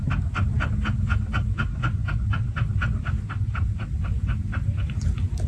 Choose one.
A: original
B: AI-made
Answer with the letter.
A